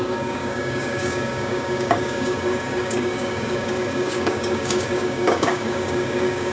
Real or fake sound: fake